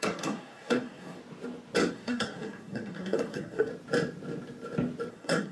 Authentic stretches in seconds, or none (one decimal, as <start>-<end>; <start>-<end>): 1.2-1.9; 3.7-5.1